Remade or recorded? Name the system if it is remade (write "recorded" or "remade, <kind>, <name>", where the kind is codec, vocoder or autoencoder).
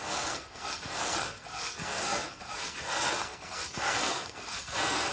remade, codec, SNAC